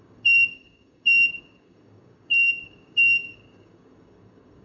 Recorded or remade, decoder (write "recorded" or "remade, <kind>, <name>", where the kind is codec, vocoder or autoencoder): remade, codec, DAC